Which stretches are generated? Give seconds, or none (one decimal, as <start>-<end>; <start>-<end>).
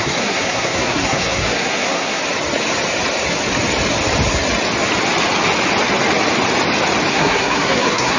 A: 0.0-2.2; 7.1-8.2